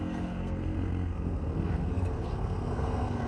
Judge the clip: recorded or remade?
remade